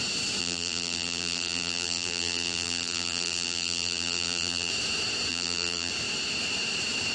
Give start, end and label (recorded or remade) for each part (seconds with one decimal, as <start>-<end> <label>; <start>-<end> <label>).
0.0-0.4 recorded; 0.4-4.7 remade; 4.7-5.3 recorded; 5.3-5.9 remade; 5.9-7.1 recorded